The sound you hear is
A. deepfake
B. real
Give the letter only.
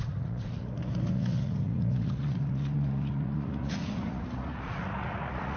A